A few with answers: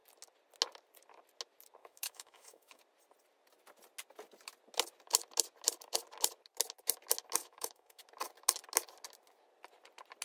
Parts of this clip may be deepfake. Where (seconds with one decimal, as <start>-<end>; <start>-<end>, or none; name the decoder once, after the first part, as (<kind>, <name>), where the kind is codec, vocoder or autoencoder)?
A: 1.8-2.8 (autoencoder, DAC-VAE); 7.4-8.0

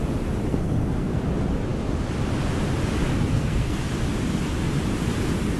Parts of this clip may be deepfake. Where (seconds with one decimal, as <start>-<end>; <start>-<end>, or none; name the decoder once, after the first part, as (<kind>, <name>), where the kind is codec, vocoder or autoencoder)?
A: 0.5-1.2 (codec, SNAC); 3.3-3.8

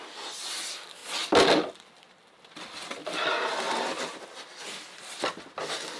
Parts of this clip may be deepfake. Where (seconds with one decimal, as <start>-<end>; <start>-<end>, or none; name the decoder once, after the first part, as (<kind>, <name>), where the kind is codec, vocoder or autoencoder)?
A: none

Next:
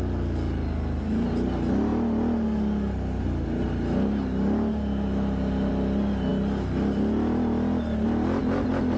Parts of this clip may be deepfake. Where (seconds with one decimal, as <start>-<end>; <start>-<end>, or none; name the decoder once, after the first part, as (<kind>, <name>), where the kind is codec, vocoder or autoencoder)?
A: none